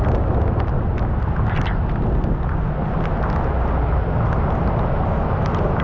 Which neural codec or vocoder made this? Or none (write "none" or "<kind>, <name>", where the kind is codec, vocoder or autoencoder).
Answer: none